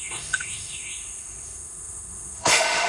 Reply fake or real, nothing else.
fake